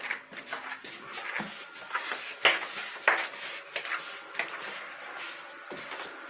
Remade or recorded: recorded